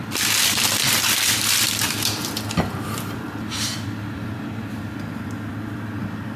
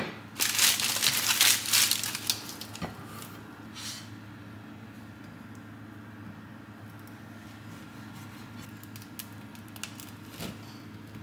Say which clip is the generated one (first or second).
first